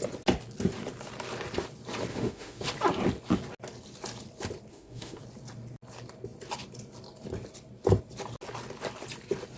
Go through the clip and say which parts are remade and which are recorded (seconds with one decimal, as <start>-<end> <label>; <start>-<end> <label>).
0.0-2.1 recorded; 2.1-2.6 remade; 2.6-4.7 recorded; 4.7-5.2 remade; 5.2-9.6 recorded